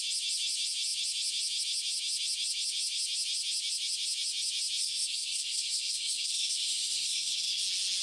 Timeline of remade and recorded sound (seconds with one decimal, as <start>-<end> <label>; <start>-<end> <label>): 0.0-4.8 recorded; 4.8-7.6 remade; 7.6-8.0 recorded